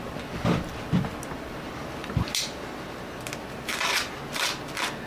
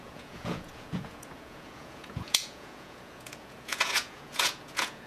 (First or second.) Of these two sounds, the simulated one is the second